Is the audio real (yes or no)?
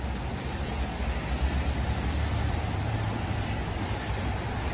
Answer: yes